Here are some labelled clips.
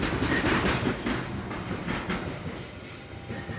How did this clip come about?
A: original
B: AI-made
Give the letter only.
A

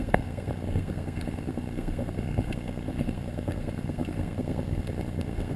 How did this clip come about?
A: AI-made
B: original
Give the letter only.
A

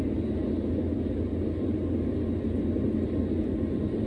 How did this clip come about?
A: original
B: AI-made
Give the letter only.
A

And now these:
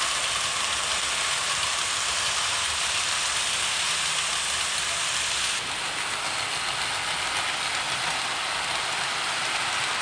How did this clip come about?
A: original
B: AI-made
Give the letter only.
A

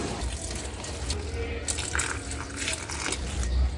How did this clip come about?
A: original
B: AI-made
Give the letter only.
A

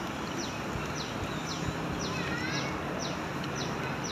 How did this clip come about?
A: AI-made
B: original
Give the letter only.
B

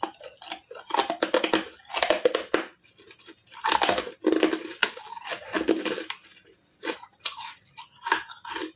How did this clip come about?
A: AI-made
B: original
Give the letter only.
A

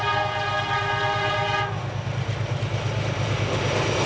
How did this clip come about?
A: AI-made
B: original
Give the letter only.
B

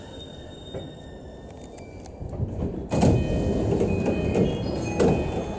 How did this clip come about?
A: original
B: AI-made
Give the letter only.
A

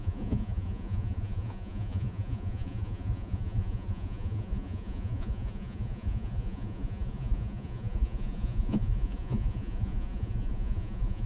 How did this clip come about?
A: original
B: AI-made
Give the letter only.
B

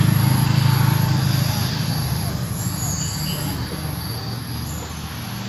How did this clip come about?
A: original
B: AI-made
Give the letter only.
A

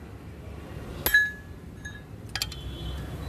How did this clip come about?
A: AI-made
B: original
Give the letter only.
B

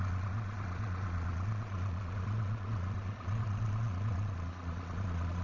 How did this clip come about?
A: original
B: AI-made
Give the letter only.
B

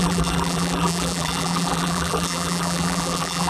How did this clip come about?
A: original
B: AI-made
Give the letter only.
B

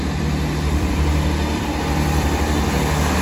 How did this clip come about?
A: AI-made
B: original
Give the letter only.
A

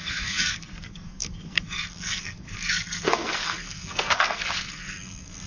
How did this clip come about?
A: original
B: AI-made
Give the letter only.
B